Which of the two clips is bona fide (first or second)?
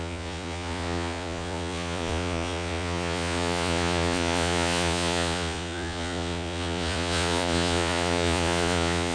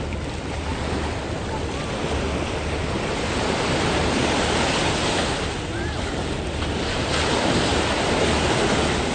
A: second